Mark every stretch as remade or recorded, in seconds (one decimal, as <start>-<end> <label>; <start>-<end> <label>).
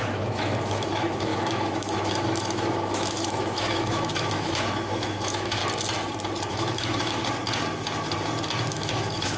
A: 0.0-5.6 remade; 5.6-6.5 recorded; 6.5-7.2 remade; 7.2-8.7 recorded; 8.7-9.4 remade